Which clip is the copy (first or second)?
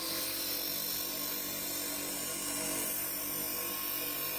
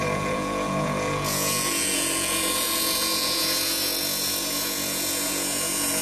second